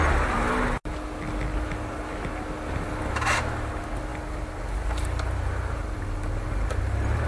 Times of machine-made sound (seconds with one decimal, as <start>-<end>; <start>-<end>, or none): none